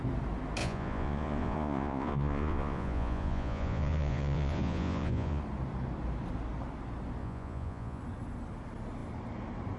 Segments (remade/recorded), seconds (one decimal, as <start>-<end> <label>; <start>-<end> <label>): 0.0-0.6 recorded; 0.6-5.4 remade; 5.4-7.2 recorded; 7.2-8.0 remade; 8.0-9.8 recorded